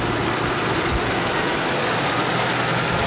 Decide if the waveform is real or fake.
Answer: real